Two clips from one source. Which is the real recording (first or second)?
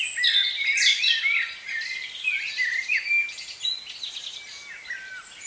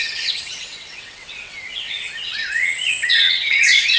first